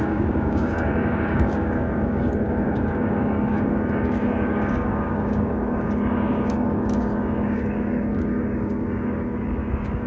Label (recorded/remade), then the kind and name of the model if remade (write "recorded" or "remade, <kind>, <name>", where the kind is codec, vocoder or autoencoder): remade, codec, DAC